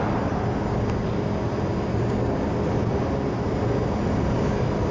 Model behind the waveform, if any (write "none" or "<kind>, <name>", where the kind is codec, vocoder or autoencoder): none